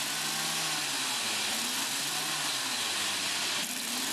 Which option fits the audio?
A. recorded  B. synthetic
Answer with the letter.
A